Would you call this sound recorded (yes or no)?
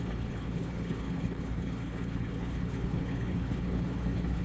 no